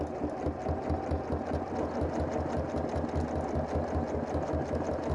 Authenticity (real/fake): real